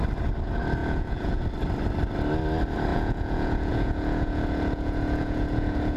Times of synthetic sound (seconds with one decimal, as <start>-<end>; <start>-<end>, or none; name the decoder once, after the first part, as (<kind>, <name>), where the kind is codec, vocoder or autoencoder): 0.8-1.4 (vocoder, Vocos); 2.9-6.0